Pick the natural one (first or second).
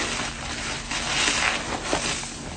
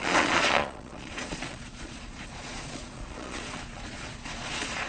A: first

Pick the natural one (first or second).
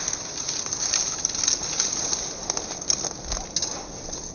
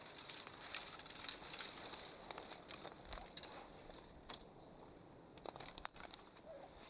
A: first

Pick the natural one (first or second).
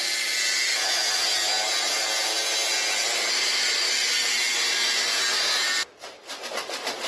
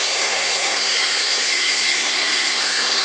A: first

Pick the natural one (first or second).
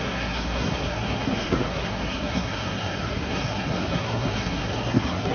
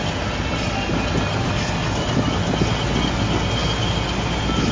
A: second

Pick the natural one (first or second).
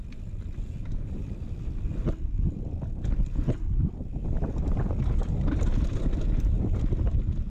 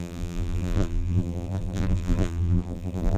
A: first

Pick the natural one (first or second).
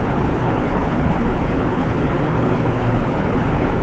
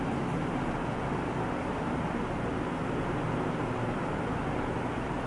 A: second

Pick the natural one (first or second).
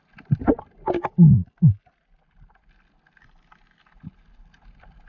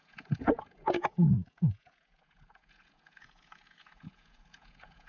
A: first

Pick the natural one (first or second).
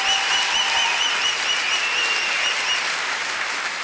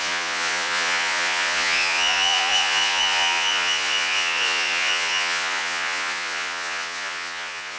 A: first